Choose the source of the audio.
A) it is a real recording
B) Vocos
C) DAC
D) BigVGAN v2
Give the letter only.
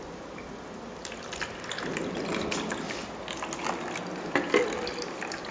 A